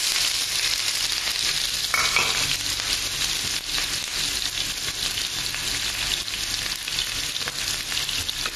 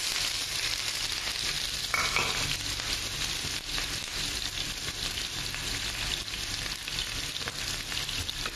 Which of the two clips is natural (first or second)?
first